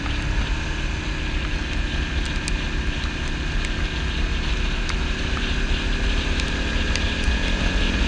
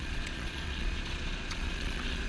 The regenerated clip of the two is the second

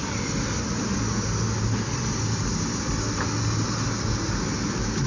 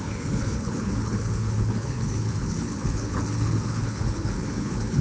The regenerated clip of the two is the second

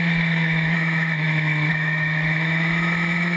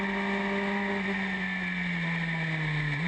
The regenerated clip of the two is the first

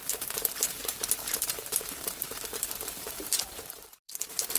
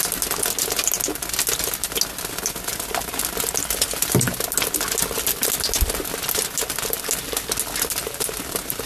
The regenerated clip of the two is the first